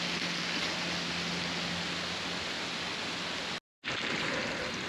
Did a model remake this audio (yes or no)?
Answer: no